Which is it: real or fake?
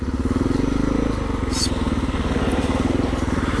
real